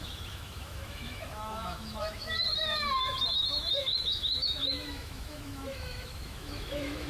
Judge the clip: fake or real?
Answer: fake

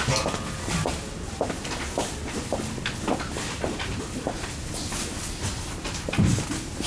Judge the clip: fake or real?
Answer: real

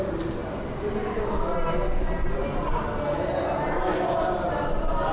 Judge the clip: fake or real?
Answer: real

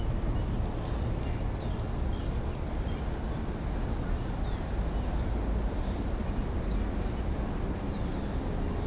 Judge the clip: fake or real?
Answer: real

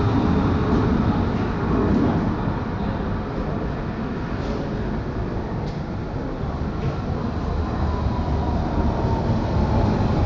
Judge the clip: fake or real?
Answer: real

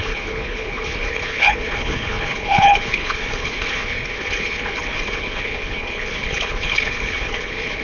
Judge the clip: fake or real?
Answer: fake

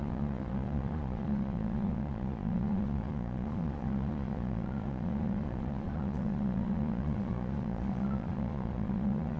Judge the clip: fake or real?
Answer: fake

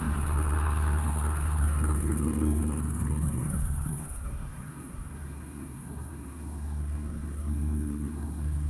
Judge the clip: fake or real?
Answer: fake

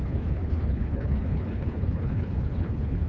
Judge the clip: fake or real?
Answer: fake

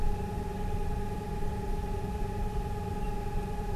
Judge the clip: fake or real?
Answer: fake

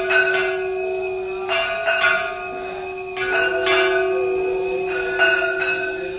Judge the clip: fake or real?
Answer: real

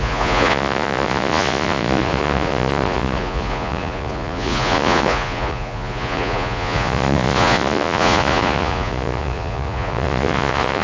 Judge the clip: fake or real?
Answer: fake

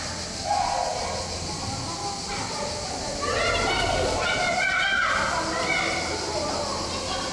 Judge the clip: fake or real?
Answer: real